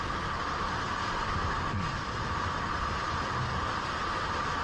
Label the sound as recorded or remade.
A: recorded